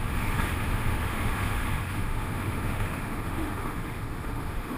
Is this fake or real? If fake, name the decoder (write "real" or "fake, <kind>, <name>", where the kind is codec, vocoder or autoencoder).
fake, autoencoder, DAC-VAE